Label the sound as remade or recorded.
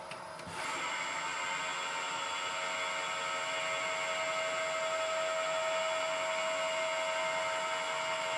recorded